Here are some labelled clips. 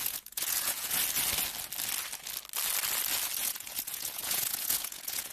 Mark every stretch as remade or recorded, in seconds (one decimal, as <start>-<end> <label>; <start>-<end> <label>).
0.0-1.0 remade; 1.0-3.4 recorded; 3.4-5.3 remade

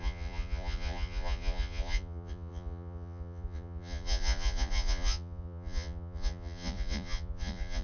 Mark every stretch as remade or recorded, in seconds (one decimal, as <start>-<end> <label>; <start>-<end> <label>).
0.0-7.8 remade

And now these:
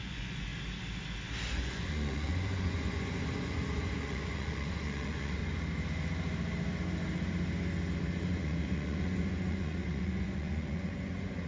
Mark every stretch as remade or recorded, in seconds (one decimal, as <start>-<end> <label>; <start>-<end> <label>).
0.0-0.5 remade; 0.5-1.5 recorded; 1.5-5.4 remade; 5.4-8.2 recorded; 8.2-11.5 remade